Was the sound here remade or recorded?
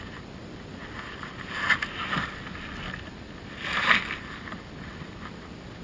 recorded